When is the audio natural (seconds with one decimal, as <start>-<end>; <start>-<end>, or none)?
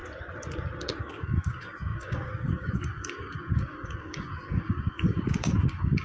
0.0-1.0